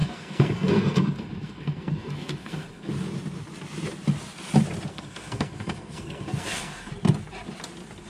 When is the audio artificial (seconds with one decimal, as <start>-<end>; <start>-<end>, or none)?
0.0-2.9; 4.9-6.9